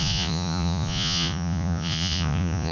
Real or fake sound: fake